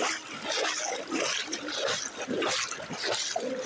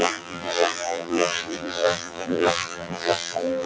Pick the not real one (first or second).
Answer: second